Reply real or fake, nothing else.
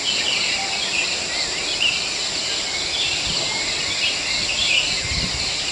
real